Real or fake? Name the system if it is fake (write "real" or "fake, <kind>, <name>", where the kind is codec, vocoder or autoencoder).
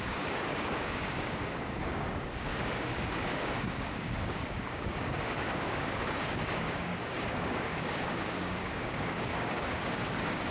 fake, codec, DAC